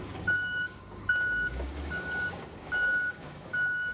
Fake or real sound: fake